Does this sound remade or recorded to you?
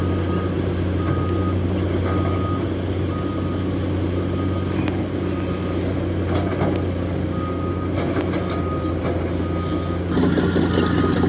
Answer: recorded